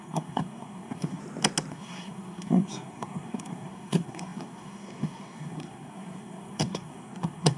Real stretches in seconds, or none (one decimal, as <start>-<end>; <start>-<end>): 1.2-1.7